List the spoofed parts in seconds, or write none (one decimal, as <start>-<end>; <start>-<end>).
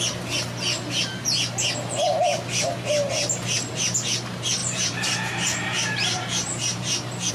4.6-7.3